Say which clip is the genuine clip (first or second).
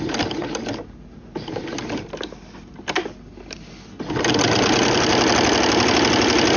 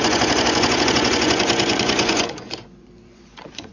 first